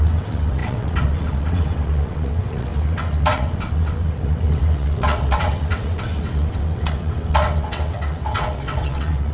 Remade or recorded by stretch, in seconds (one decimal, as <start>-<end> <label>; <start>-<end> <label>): 0.0-9.3 remade

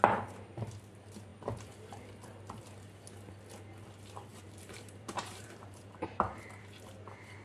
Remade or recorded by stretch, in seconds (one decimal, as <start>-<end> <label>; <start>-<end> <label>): 0.0-4.3 recorded; 4.3-6.6 remade; 6.6-7.4 recorded

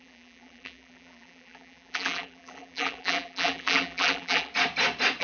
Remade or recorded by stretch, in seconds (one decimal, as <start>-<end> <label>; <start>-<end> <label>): 0.0-4.5 remade; 4.5-5.2 recorded

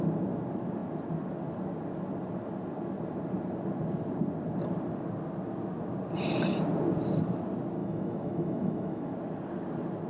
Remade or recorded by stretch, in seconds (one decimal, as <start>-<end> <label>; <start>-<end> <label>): 0.0-7.8 recorded; 7.8-9.1 remade; 9.1-10.1 recorded

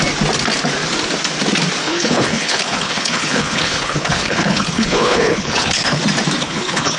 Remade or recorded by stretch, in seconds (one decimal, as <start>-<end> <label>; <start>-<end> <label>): 0.0-1.8 recorded; 1.8-6.0 remade; 6.0-6.4 recorded; 6.4-7.0 remade

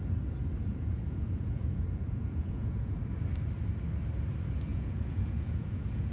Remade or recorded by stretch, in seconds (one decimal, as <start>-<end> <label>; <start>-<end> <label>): 0.0-0.6 recorded; 0.6-3.0 remade; 3.0-4.7 recorded; 4.7-6.1 remade

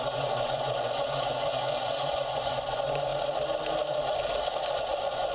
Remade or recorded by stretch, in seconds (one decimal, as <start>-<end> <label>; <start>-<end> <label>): 0.0-3.1 remade; 3.1-4.8 recorded; 4.8-5.3 remade

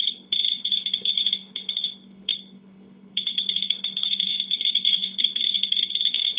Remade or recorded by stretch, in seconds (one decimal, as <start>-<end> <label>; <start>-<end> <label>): 0.0-6.4 remade